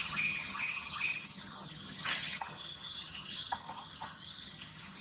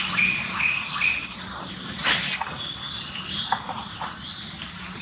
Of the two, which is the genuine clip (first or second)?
second